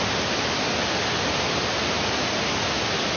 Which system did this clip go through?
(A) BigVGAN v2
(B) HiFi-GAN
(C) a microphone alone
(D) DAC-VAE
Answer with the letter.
C